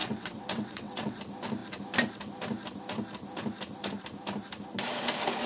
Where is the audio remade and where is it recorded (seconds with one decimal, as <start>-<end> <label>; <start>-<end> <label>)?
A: 0.0-1.2 remade; 1.2-5.5 recorded